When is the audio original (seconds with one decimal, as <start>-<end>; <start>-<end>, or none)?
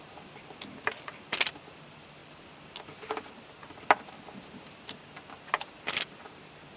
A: 0.0-6.8